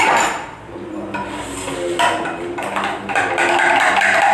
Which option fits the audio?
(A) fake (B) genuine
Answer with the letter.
B